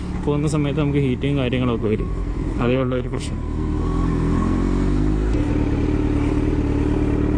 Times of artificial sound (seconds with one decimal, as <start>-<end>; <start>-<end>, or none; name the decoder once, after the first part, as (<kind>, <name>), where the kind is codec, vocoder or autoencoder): 1.8-5.5 (codec, SNAC)